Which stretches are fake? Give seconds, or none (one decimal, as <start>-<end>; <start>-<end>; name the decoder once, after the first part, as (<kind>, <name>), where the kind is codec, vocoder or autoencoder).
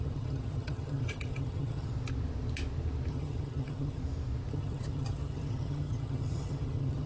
0.0-1.9 (vocoder, HiFi-GAN); 3.1-4.0; 4.5-7.1